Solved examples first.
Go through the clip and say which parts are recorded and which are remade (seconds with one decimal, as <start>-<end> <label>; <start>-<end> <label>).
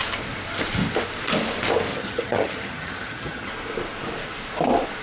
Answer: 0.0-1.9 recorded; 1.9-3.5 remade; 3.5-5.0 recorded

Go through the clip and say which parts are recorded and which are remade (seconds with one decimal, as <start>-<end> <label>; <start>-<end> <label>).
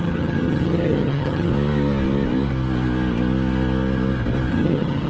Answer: 0.0-1.5 remade; 1.5-4.5 recorded; 4.5-5.1 remade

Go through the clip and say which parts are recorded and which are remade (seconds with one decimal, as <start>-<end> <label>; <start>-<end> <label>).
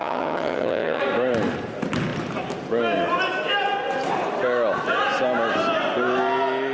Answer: 0.0-1.0 remade; 1.0-6.7 recorded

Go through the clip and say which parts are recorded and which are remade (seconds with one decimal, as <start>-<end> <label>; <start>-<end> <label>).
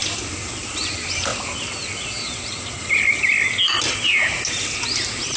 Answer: 0.0-5.4 recorded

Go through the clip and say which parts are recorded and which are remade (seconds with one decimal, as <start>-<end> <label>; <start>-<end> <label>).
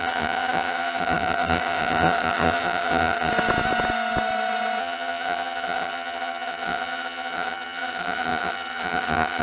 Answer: 0.0-3.3 remade; 3.3-4.8 recorded; 4.8-9.4 remade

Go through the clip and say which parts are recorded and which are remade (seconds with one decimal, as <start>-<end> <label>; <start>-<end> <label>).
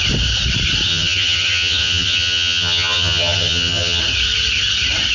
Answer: 0.0-0.9 recorded; 0.9-4.0 remade; 4.0-5.1 recorded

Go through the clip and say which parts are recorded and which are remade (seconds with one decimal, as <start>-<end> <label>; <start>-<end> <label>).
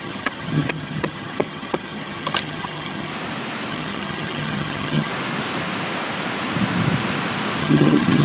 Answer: 0.0-3.1 remade; 3.1-3.7 recorded; 3.7-5.1 remade; 5.1-7.6 recorded; 7.6-8.2 remade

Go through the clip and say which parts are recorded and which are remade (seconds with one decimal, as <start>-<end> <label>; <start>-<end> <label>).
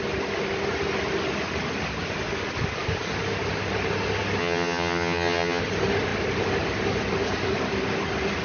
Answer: 0.0-4.4 recorded; 4.4-5.6 remade; 5.6-8.4 recorded